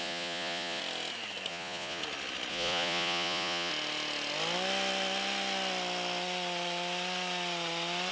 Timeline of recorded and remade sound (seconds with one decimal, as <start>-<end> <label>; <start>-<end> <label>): 0.0-0.8 remade; 0.8-1.5 recorded; 1.5-2.0 remade; 2.0-2.5 recorded; 2.5-3.7 remade; 3.7-8.1 recorded